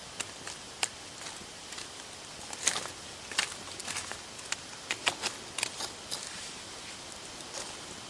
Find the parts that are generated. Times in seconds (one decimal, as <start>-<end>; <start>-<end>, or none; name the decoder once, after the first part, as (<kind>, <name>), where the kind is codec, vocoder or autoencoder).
none